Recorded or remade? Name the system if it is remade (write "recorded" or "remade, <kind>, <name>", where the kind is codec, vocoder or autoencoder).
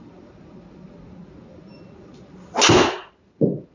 recorded